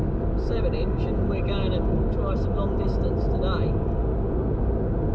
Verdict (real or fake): real